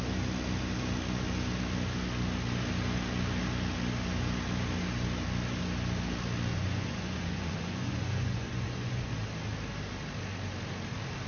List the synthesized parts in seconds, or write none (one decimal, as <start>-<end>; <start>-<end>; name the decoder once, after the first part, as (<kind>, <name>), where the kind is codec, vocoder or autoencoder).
6.5-9.1 (vocoder, Vocos)